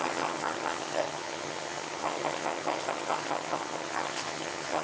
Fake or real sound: fake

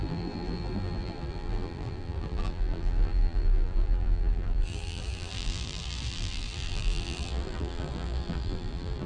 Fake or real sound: fake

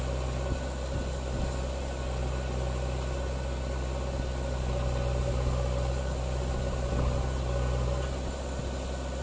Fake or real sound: real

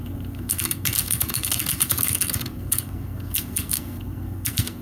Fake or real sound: fake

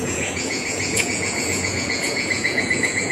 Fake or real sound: fake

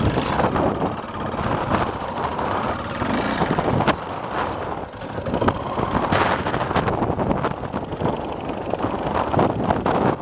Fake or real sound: real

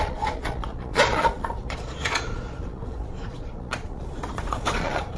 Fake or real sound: fake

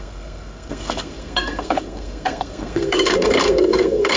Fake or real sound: fake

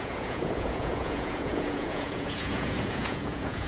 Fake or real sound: fake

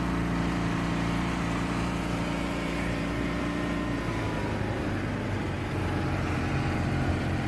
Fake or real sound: fake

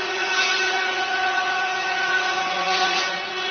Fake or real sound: fake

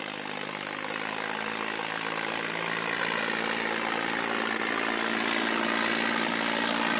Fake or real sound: real